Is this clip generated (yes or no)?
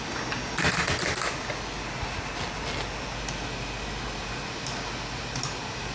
no